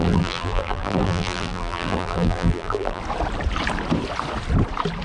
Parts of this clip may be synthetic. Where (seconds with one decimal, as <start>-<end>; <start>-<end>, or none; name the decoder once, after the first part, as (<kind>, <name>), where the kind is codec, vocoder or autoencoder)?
0.0-3.0 (vocoder, BigVGAN v2)